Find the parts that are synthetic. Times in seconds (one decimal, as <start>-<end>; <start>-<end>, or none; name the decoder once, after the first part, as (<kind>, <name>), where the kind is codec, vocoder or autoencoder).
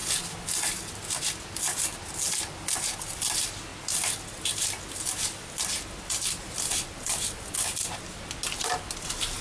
none